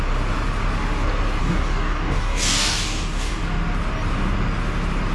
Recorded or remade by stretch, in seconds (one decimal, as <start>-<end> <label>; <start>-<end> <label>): 0.0-1.4 recorded; 1.4-3.4 remade; 3.4-5.1 recorded